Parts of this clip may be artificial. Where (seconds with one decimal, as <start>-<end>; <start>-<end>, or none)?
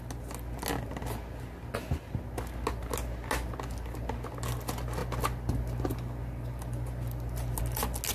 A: none